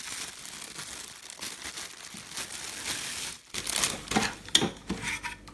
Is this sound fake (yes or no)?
no